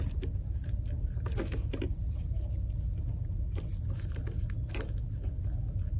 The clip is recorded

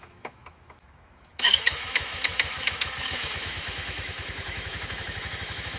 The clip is remade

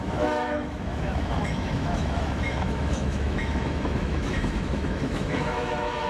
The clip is remade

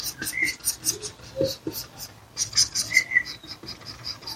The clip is recorded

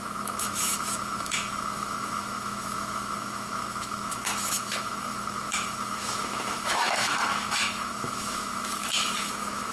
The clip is remade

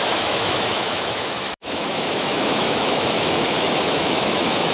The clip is remade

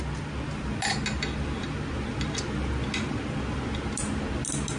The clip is recorded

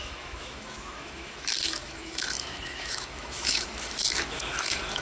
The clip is remade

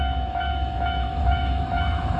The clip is remade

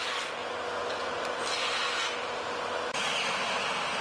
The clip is recorded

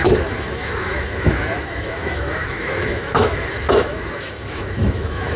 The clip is remade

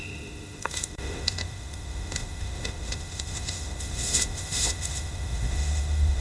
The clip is remade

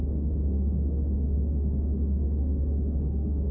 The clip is remade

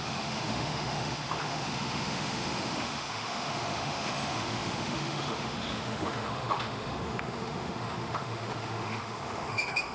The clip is remade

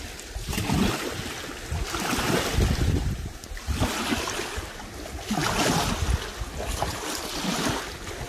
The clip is recorded